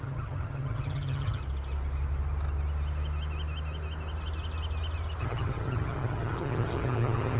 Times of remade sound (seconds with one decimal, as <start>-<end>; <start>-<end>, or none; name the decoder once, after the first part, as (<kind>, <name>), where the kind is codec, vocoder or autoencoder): 0.0-1.4 (vocoder, HiFi-GAN); 5.2-7.4